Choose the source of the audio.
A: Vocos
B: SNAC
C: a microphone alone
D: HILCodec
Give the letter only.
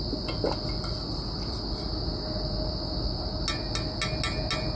C